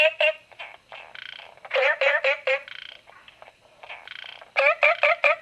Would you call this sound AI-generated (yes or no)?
yes